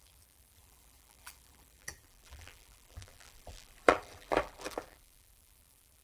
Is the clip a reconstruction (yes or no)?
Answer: yes